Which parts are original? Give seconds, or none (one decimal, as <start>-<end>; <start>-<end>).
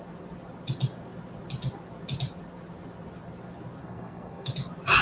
0.0-3.8; 4.5-5.0